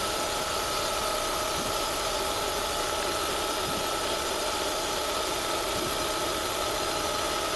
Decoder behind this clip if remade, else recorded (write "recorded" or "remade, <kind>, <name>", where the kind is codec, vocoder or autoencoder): recorded